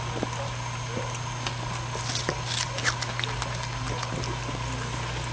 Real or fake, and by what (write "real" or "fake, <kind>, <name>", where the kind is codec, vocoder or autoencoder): real